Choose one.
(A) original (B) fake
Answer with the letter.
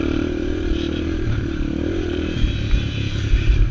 B